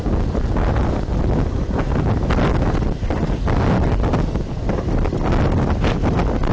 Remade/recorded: recorded